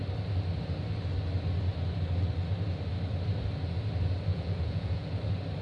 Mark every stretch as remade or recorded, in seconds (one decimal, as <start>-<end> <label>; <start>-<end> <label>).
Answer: 0.0-4.3 recorded; 4.3-5.1 remade; 5.1-5.6 recorded